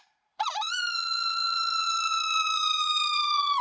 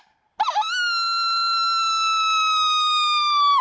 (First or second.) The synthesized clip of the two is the first